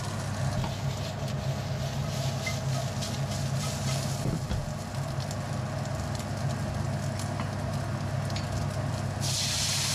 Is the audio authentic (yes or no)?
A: yes